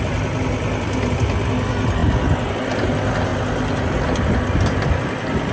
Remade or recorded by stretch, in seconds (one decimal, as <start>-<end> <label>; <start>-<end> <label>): 0.0-5.5 recorded